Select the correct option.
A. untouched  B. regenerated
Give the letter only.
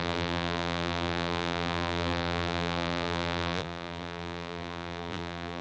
B